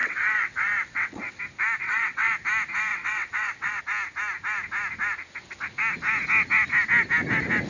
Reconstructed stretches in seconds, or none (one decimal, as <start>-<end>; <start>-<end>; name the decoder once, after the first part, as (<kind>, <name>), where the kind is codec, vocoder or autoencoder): 0.0-1.4 (vocoder, WaveNeXt); 1.8-2.3; 2.9-3.8